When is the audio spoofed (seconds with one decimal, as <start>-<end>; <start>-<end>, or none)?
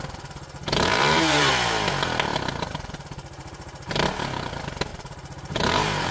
0.6-1.5; 2.3-3.9; 4.9-6.1